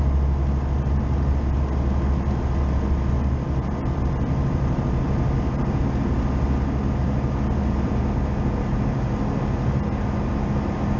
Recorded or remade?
recorded